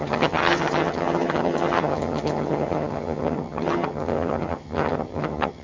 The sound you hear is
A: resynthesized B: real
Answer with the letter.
A